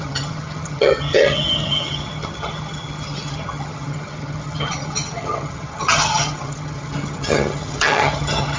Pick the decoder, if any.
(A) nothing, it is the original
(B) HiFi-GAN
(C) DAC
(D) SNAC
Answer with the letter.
B